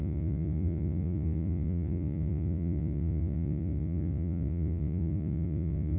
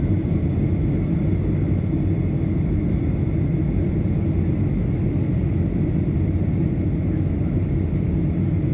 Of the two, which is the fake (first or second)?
first